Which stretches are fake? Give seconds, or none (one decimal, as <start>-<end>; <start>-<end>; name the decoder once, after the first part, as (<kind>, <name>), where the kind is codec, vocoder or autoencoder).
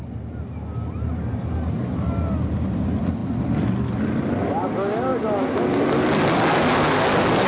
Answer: none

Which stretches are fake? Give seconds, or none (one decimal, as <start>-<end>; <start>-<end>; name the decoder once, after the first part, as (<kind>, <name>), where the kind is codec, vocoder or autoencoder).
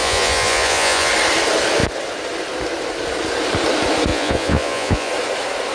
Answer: 0.0-1.1 (vocoder, Vocos); 4.1-5.1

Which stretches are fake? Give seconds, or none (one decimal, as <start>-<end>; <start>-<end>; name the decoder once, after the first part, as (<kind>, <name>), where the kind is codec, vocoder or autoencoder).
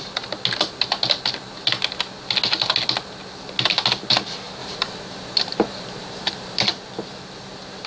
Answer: 4.6-6.6 (vocoder, BigVGAN v2)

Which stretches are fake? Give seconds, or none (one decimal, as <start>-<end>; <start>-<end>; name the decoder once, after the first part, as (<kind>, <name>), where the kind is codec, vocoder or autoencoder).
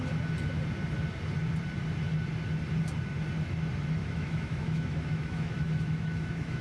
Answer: 4.0-6.6 (autoencoder, DAC-VAE)